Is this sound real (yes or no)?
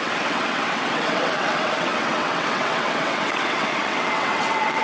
no